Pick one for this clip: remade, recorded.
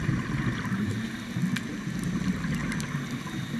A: recorded